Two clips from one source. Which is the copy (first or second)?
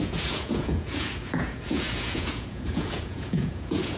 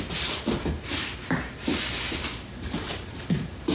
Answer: first